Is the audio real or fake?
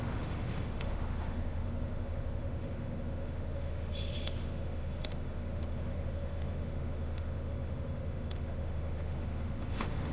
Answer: fake